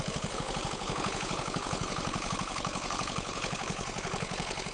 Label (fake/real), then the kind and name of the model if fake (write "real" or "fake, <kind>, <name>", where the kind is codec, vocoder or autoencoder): fake, codec, HILCodec